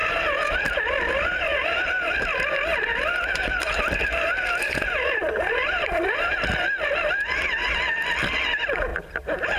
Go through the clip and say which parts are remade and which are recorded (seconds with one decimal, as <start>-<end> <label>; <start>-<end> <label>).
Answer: 0.0-2.1 remade; 2.1-2.7 recorded; 2.7-6.5 remade; 6.5-9.6 recorded